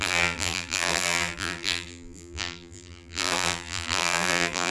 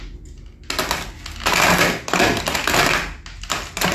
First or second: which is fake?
first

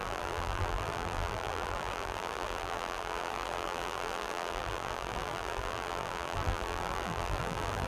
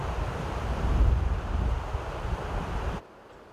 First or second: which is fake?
first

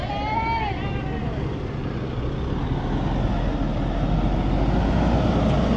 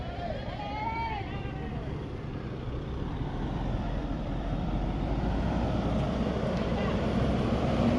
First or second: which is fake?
second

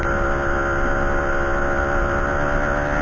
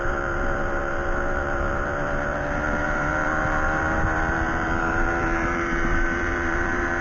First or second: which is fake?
second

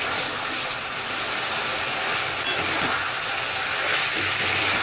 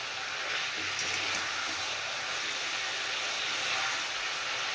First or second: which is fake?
first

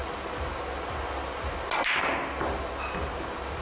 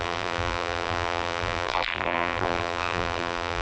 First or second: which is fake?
second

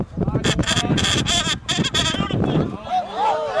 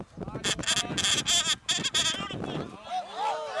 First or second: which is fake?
first